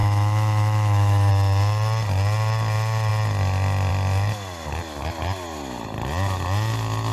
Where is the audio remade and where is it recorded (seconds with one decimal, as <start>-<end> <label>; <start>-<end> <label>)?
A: 0.0-1.3 remade; 1.3-7.1 recorded